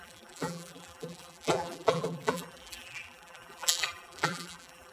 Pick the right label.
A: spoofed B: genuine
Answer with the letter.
A